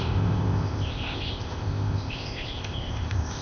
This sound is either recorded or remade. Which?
remade